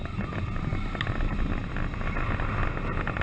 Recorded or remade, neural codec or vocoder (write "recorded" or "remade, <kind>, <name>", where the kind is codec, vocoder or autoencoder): recorded